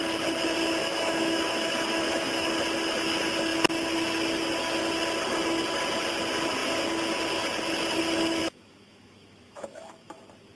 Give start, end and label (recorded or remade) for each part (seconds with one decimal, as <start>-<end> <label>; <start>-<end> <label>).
0.0-0.8 recorded; 0.8-2.5 remade; 2.5-8.4 recorded; 8.4-10.2 remade; 10.2-10.6 recorded